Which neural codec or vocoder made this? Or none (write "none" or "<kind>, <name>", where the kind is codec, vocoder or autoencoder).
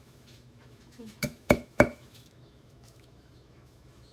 autoencoder, DAC-VAE